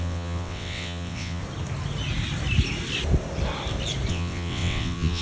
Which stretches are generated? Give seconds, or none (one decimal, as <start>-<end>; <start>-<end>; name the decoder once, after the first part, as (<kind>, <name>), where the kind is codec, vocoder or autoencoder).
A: 0.0-1.4 (vocoder, WaveNeXt); 4.1-5.2